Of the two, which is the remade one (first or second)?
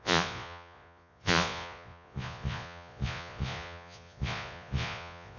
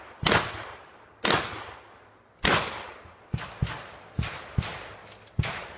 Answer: first